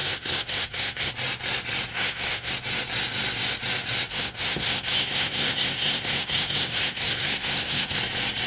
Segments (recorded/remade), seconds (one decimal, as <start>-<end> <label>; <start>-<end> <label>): 0.0-1.1 remade; 1.1-1.9 recorded; 1.9-2.5 remade; 2.5-4.1 recorded; 4.1-8.0 remade; 8.0-8.5 recorded